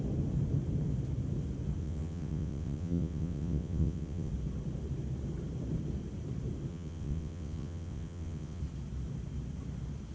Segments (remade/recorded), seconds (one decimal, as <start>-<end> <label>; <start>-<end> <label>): 0.0-1.8 recorded; 1.8-4.3 remade; 4.3-6.7 recorded; 6.7-8.6 remade; 8.6-10.1 recorded